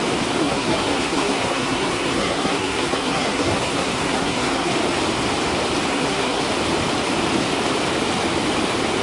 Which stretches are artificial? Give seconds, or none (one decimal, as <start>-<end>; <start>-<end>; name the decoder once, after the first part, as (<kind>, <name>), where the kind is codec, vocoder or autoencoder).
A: 0.4-4.7 (codec, SNAC); 5.9-6.4